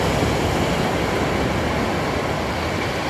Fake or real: real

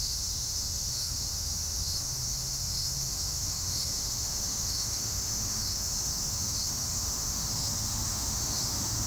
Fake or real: fake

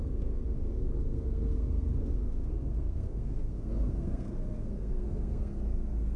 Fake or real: fake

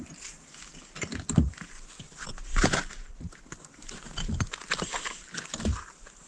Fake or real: real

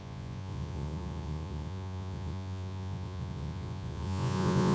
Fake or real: fake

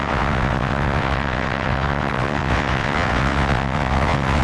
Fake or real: fake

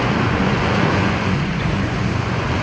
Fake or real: fake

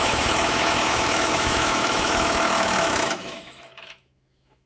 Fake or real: fake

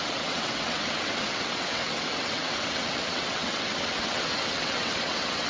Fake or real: fake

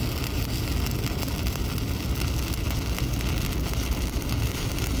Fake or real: real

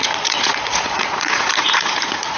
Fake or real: fake